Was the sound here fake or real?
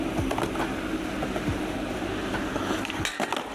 real